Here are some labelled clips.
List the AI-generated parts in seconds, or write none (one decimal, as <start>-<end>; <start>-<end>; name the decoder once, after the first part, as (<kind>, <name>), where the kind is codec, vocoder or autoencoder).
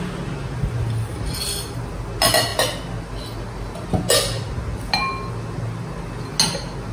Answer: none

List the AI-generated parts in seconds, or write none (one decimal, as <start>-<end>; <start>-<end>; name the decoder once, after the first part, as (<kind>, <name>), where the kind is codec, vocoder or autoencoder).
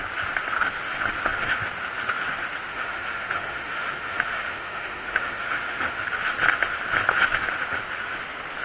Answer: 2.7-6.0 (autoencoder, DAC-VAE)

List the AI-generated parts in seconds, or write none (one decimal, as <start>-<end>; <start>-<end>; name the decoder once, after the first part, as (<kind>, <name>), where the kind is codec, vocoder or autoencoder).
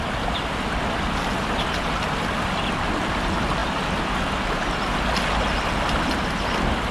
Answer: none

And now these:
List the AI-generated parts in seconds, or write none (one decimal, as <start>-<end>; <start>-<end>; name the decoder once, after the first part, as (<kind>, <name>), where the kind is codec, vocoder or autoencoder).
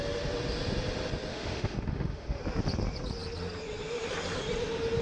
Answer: 1.3-2.4 (autoencoder, DAC-VAE)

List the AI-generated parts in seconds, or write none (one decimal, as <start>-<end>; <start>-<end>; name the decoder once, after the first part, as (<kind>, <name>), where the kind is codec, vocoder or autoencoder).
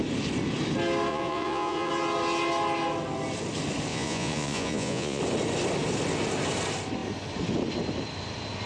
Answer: 1.1-1.9 (vocoder, Vocos); 3.9-5.2